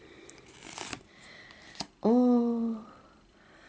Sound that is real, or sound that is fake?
fake